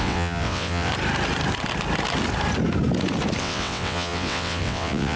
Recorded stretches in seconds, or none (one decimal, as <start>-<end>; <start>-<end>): 0.9-3.4